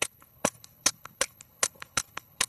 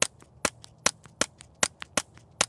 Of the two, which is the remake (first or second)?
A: first